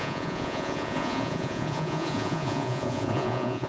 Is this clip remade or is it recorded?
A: remade